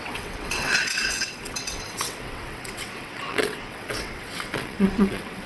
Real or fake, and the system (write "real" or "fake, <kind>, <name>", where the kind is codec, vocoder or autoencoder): fake, vocoder, WaveNeXt